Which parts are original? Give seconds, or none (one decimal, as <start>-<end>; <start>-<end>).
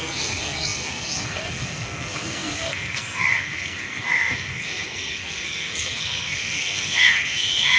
none